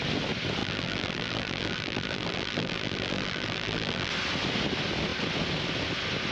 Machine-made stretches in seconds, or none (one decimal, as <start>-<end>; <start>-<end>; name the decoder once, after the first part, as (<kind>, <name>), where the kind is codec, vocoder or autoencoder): 0.6-4.1 (vocoder, BigVGAN v2)